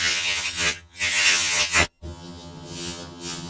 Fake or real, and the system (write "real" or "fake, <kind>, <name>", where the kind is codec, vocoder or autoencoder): fake, vocoder, HiFi-GAN